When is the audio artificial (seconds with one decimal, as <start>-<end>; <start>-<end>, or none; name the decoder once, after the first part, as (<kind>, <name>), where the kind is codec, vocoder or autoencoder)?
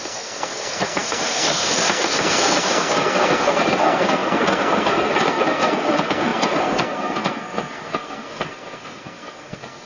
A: 0.0-9.9 (codec, SNAC)